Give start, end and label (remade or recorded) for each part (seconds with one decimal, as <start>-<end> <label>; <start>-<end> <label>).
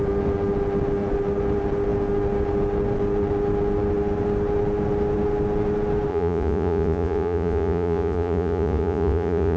0.0-6.1 recorded; 6.1-9.6 remade